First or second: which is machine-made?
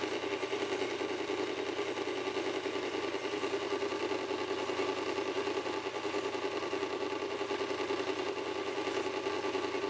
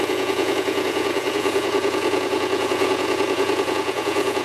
second